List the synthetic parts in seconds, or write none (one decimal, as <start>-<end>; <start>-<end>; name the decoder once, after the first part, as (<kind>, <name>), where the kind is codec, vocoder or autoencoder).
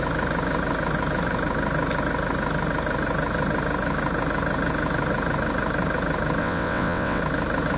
6.4-7.2 (vocoder, WaveNeXt)